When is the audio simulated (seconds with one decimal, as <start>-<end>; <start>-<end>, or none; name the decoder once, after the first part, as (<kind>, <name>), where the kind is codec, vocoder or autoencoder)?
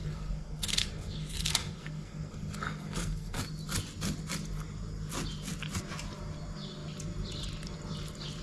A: 0.0-3.4 (codec, SNAC)